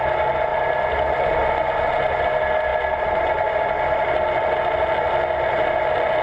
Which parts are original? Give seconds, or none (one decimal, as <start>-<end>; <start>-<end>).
0.0-6.2